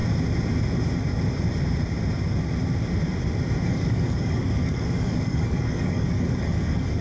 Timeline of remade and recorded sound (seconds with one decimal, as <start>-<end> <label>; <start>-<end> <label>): 0.0-3.7 recorded; 3.7-7.0 remade